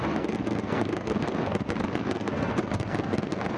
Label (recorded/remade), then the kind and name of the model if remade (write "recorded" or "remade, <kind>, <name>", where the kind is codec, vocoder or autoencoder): remade, codec, SNAC